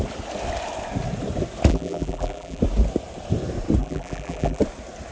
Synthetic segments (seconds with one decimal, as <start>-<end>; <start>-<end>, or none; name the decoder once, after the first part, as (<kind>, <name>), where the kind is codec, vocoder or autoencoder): 1.7-2.6 (vocoder, BigVGAN v2); 3.8-4.6